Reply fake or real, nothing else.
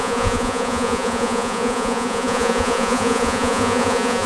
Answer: fake